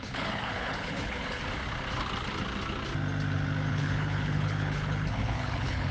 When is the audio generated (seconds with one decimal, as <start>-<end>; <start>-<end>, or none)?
0.0-1.4; 3.7-5.9